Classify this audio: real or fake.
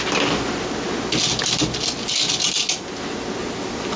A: real